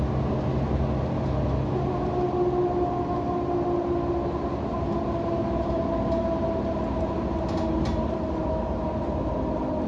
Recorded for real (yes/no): yes